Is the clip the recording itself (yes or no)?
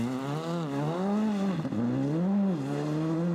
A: yes